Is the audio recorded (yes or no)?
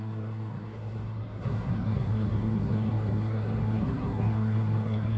no